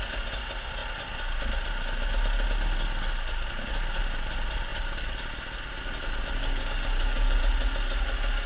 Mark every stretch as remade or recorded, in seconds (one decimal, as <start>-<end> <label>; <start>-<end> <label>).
0.0-6.4 recorded; 6.4-7.4 remade; 7.4-8.5 recorded